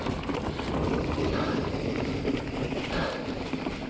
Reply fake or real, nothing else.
real